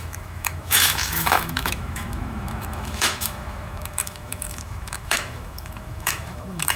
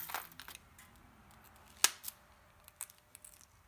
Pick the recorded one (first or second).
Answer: second